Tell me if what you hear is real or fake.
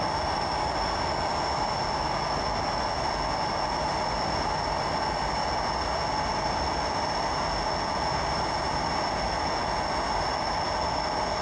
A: real